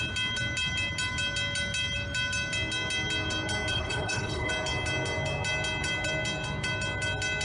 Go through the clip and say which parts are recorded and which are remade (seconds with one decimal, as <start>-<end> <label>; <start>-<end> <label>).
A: 0.0-3.7 recorded; 3.7-4.5 remade; 4.5-7.4 recorded